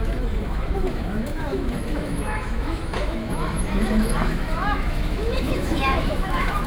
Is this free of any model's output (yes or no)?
no